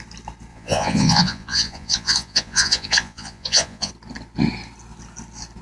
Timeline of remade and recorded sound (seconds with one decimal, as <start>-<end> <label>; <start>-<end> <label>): 0.0-0.5 recorded; 0.5-3.9 remade; 3.9-5.6 recorded